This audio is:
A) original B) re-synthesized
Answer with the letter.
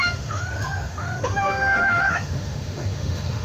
B